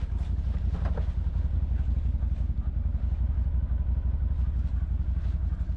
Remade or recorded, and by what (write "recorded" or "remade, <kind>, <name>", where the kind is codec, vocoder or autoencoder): recorded